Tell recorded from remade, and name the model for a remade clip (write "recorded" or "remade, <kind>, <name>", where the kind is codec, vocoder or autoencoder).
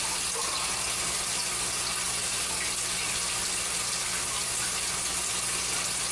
recorded